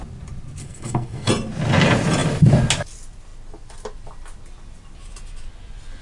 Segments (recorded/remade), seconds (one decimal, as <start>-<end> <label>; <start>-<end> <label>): 0.0-0.6 recorded; 0.6-1.3 remade; 1.3-6.0 recorded